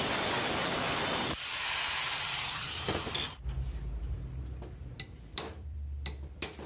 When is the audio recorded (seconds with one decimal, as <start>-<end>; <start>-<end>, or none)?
1.5-5.1